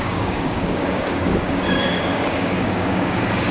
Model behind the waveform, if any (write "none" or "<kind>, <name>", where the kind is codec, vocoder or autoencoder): codec, DAC